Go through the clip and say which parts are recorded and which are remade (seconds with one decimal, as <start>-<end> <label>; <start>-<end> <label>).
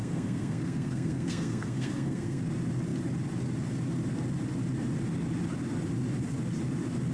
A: 0.0-2.4 remade; 2.4-7.1 recorded